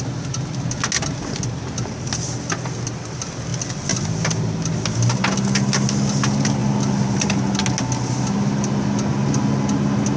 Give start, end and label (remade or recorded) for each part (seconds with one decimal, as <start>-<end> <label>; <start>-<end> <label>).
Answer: 0.0-10.2 recorded